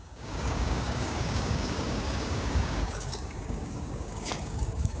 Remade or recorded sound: remade